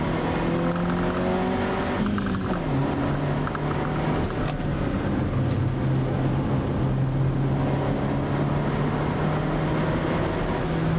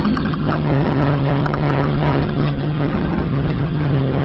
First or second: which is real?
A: first